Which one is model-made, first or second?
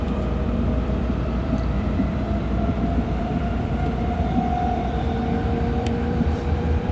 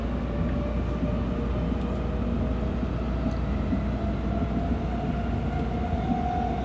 first